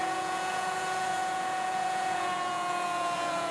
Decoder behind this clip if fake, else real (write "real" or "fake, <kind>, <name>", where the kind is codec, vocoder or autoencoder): fake, vocoder, Vocos